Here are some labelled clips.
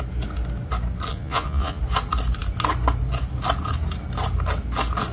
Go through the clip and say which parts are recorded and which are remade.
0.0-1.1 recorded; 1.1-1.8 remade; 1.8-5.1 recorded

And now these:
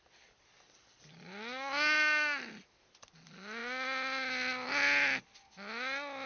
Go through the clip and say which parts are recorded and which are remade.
0.0-6.3 recorded

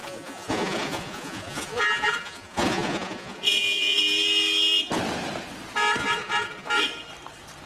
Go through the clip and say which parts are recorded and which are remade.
0.0-4.0 remade; 4.0-6.0 recorded; 6.0-6.7 remade; 6.7-7.7 recorded

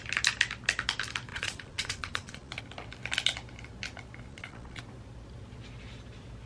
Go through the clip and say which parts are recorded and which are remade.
0.0-1.3 recorded; 1.3-2.6 remade; 2.6-4.3 recorded; 4.3-4.8 remade; 4.8-6.5 recorded

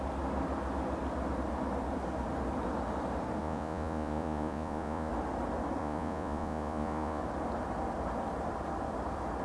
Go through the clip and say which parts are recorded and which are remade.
0.0-3.4 recorded; 3.4-5.1 remade; 5.1-5.8 recorded; 5.8-7.2 remade; 7.2-9.4 recorded

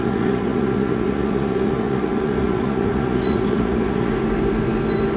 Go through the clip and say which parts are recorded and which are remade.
0.0-4.1 remade; 4.1-5.2 recorded